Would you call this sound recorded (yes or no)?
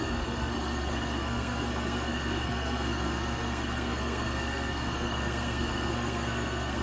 no